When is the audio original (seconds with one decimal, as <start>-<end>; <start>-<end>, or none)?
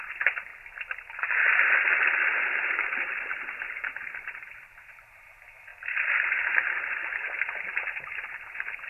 0.5-2.7; 5.7-7.9